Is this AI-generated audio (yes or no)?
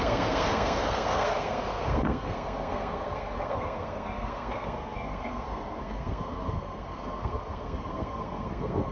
yes